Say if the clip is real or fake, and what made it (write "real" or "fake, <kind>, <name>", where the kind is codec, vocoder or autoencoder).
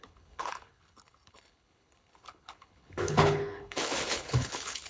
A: fake, codec, HILCodec